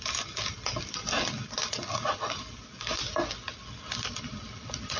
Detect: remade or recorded recorded